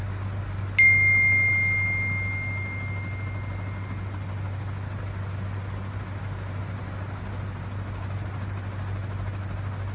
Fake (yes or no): no